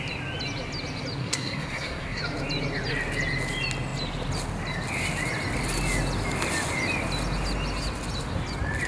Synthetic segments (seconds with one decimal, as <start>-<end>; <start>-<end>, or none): 1.2-2.2